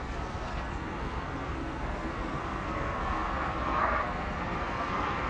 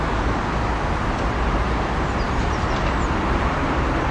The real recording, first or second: second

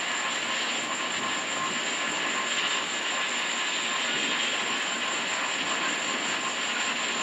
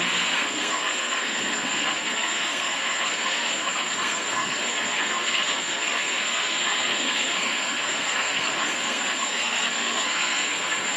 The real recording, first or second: first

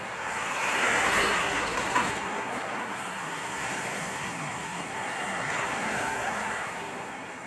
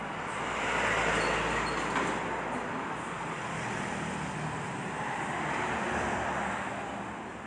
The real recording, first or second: second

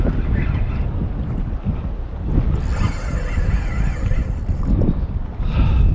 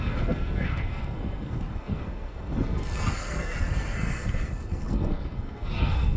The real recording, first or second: first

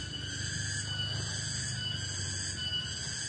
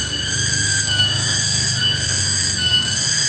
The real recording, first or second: first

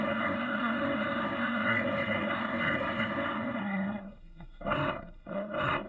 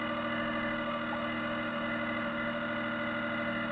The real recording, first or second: second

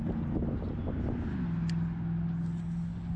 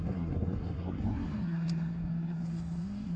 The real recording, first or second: first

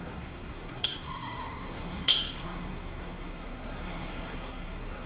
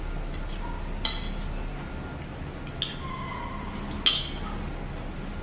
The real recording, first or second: second